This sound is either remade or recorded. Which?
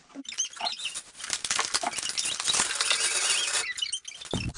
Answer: recorded